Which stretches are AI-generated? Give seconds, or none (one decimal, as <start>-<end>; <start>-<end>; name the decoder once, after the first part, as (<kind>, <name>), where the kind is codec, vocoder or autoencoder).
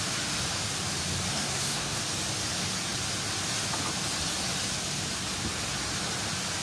1.3-2.0 (codec, SNAC)